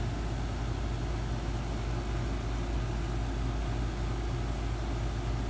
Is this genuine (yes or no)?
yes